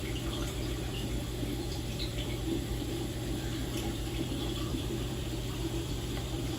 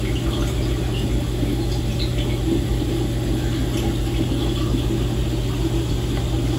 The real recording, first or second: second